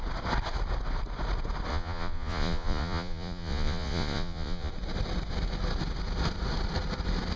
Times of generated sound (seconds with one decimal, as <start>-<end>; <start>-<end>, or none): 1.7-4.7